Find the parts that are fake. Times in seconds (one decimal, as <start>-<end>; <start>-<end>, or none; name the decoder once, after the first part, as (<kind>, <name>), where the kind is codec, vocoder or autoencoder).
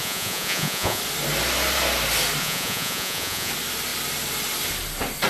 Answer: 0.0-1.0 (vocoder, Vocos); 2.4-3.5